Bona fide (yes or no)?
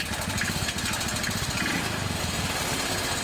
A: yes